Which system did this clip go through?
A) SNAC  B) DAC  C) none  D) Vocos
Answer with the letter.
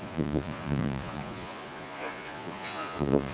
D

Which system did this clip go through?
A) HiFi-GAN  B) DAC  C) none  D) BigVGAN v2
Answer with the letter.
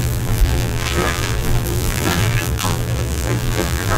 D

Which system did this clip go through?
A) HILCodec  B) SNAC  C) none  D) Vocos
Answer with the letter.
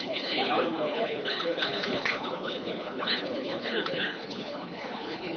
A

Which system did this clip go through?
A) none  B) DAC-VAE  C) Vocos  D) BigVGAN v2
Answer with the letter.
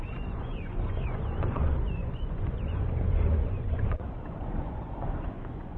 C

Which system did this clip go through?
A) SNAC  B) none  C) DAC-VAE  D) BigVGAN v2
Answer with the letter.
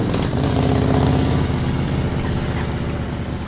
B